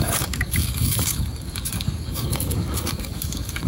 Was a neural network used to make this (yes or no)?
yes